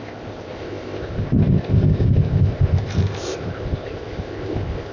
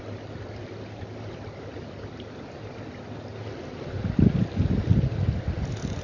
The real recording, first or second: second